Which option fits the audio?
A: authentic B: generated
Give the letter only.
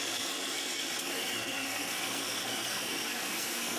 B